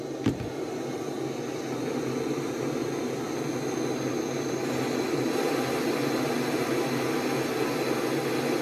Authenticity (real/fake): real